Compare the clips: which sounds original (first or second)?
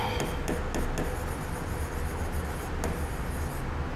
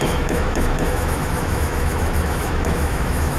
first